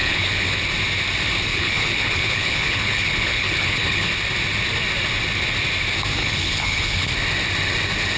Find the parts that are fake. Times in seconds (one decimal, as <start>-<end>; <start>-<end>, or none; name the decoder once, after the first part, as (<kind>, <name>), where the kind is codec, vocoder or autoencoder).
0.0-0.6 (codec, HILCodec); 1.5-4.1; 6.2-7.1